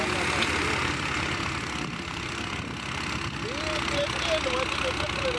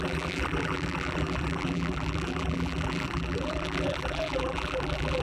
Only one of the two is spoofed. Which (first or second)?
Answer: second